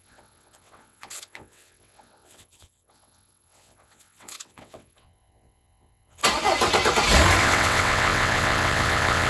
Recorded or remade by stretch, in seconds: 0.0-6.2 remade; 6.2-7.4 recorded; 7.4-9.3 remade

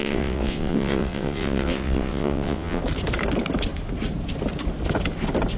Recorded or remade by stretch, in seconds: 0.0-2.8 remade; 2.8-5.6 recorded

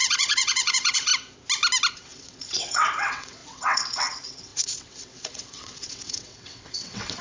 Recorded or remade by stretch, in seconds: 0.0-1.1 remade; 1.1-1.9 recorded; 1.9-7.2 remade

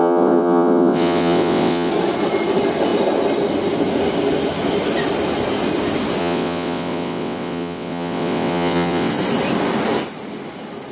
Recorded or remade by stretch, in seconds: 0.0-1.9 remade; 1.9-6.2 recorded; 6.2-9.1 remade; 9.1-10.9 recorded

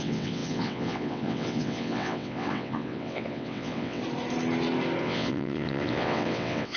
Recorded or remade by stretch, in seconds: 0.0-4.0 remade; 4.0-5.0 recorded; 5.0-6.8 remade

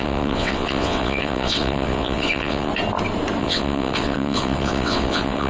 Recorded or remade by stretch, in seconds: 0.0-2.7 remade; 2.7-3.4 recorded; 3.4-5.5 remade

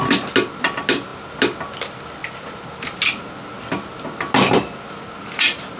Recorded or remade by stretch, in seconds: 0.0-5.8 recorded

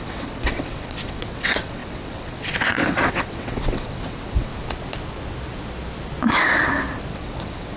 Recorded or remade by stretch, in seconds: 0.0-4.5 remade; 4.5-7.1 recorded; 7.1-7.8 remade